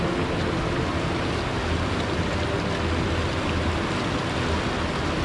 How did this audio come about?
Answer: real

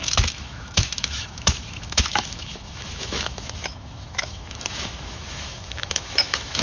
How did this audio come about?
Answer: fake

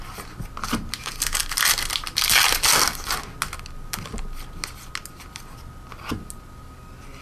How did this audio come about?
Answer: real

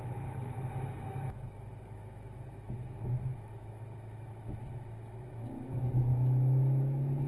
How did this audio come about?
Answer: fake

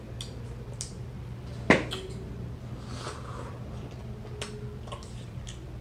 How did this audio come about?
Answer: real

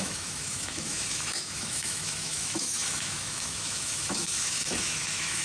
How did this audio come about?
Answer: fake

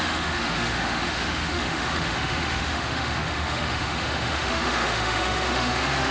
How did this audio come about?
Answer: fake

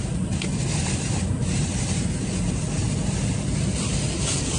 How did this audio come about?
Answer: real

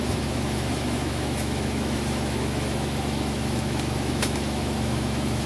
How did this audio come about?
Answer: fake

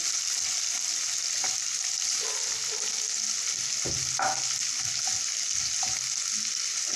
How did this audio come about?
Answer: real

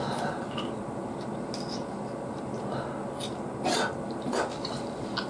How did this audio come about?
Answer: real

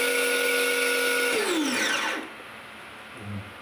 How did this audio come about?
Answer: real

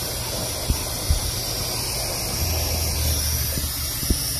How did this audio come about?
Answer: real